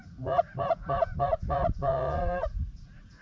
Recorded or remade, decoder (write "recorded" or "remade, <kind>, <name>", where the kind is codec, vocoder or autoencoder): remade, vocoder, Vocos